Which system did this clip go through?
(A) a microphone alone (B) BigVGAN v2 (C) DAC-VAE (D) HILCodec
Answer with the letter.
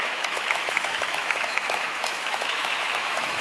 C